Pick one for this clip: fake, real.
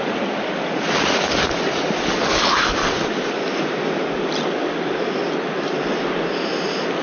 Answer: real